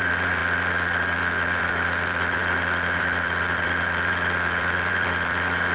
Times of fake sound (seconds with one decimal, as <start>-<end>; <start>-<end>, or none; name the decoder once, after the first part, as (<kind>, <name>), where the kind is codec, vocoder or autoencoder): 0.0-0.4 (vocoder, BigVGAN v2); 1.6-2.4; 3.0-5.7